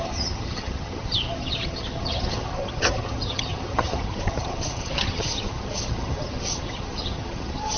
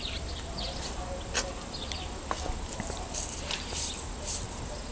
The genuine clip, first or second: second